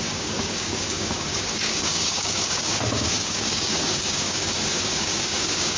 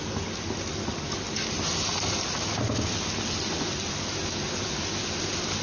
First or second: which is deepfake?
first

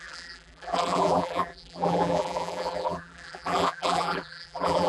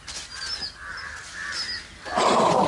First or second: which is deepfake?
first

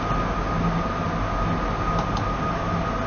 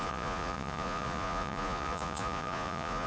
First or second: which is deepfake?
second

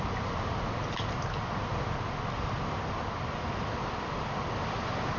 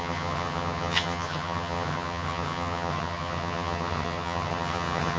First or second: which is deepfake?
second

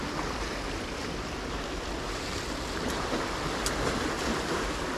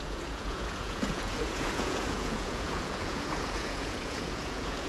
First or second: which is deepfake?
second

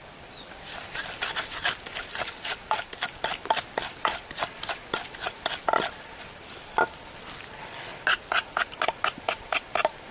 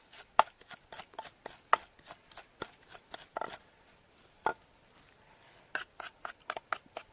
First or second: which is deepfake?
first